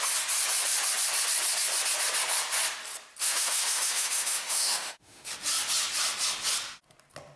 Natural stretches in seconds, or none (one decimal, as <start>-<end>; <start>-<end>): 0.0-3.2; 5.3-7.4